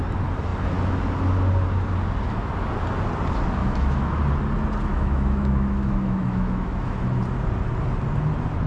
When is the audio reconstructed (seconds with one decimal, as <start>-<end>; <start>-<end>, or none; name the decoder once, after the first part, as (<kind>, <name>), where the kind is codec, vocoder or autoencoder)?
3.6-4.2 (autoencoder, DAC-VAE); 4.9-7.2